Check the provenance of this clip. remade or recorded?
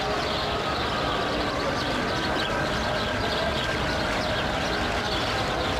recorded